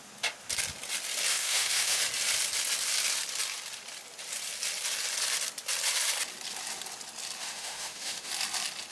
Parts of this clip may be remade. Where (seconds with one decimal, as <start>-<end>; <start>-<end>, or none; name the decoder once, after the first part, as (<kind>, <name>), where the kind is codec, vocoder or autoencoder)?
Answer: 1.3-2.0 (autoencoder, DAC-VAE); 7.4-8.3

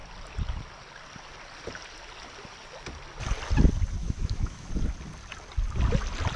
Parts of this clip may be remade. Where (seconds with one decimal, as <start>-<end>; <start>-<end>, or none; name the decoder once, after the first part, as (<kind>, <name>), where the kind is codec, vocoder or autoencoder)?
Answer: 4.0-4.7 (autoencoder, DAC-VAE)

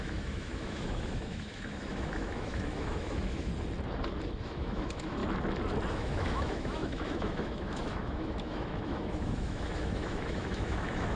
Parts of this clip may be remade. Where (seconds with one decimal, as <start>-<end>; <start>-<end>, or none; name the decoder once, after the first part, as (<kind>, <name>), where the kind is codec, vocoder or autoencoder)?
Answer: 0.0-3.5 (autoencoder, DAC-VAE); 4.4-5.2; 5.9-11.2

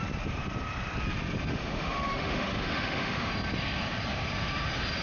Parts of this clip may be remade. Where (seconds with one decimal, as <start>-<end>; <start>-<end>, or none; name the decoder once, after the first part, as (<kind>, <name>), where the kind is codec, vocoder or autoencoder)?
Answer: 1.5-3.3 (autoencoder, DAC-VAE)

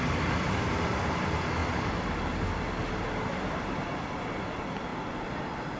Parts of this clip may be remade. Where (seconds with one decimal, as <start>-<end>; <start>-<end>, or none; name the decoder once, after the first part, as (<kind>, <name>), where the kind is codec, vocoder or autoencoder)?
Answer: none

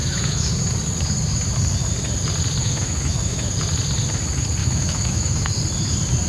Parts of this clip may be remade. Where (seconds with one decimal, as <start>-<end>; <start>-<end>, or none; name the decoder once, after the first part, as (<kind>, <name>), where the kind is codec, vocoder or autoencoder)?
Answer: 0.0-0.5 (autoencoder, DAC-VAE); 2.6-3.5; 4.6-5.5